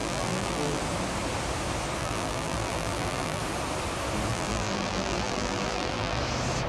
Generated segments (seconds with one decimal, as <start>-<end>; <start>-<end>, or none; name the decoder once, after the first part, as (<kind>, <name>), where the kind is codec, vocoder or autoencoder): 0.0-0.8 (vocoder, BigVGAN v2); 2.0-3.4; 4.3-6.2